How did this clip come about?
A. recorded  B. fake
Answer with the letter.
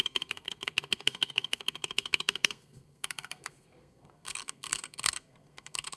B